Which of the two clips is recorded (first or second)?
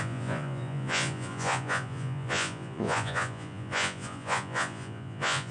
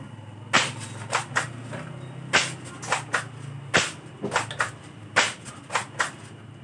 second